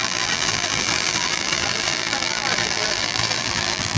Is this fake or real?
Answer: fake